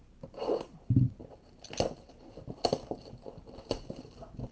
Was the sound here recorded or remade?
recorded